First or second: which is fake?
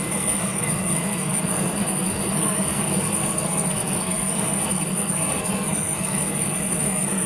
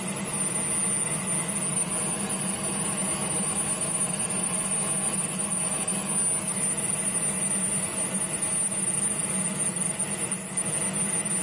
first